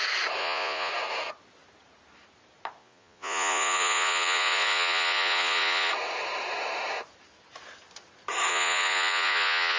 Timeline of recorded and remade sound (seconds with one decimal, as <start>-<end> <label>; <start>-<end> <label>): 0.0-0.4 recorded; 0.4-0.9 remade; 0.9-2.8 recorded; 2.8-5.9 remade; 5.9-8.5 recorded; 8.5-9.8 remade